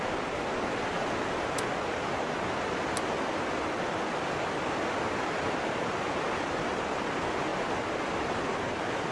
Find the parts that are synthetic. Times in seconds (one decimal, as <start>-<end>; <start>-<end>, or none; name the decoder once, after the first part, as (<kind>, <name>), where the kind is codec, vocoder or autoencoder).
none